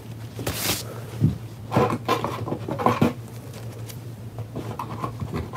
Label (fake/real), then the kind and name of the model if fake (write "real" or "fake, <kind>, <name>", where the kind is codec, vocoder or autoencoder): fake, vocoder, BigVGAN v2